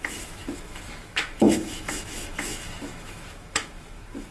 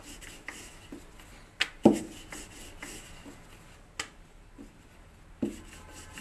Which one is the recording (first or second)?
second